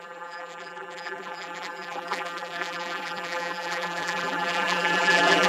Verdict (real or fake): fake